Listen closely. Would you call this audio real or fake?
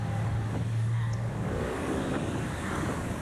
fake